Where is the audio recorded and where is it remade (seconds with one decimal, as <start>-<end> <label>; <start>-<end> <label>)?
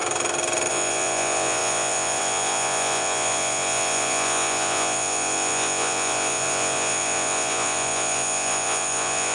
0.0-0.7 recorded; 0.7-9.3 remade